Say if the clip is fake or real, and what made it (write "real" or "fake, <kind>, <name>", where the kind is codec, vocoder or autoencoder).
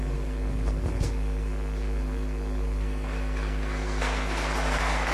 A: fake, codec, SNAC